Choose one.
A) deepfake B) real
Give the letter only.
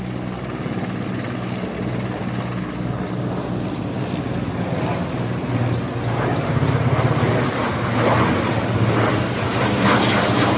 B